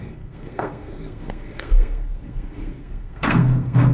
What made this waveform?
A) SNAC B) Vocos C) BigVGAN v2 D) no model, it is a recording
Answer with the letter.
A